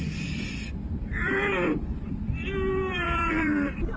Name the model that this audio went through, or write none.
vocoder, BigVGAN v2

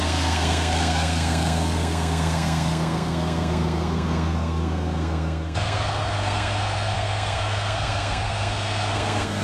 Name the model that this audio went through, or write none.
codec, SNAC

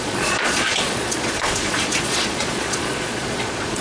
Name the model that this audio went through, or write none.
vocoder, Vocos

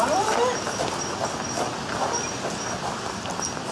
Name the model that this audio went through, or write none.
none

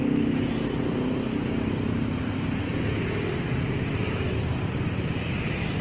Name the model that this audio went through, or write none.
none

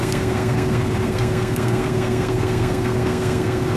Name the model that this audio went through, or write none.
codec, SNAC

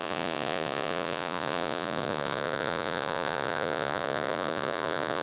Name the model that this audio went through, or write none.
vocoder, Vocos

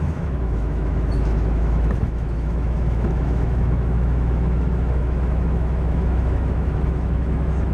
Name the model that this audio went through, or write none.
autoencoder, DAC-VAE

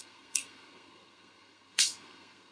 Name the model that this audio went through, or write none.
codec, SNAC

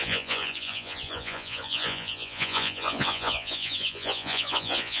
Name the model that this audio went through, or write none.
vocoder, Vocos